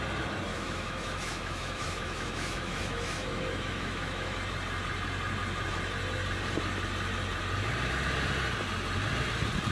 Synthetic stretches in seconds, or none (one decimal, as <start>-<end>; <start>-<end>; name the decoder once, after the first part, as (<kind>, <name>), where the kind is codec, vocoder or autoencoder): 0.5-4.4 (autoencoder, DAC-VAE)